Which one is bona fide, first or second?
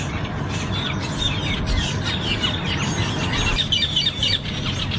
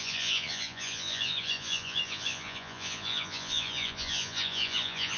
first